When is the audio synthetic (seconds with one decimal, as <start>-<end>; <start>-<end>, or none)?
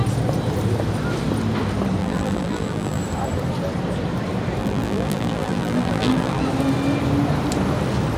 2.0-3.0; 4.6-6.4